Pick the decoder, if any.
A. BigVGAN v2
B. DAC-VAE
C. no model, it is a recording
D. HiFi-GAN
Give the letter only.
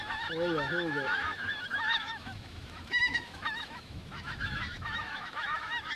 B